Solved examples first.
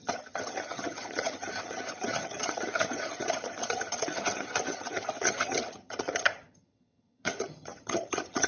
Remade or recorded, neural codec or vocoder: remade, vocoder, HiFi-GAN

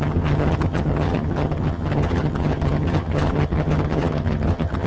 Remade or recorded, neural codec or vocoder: remade, vocoder, HiFi-GAN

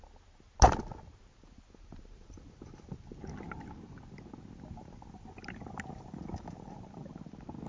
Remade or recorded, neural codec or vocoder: recorded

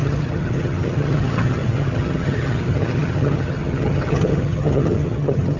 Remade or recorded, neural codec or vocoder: remade, vocoder, HiFi-GAN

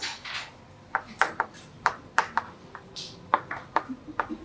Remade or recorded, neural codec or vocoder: recorded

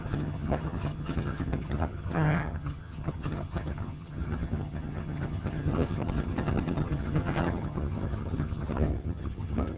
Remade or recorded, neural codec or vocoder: remade, vocoder, HiFi-GAN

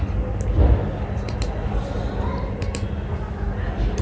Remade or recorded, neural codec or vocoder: recorded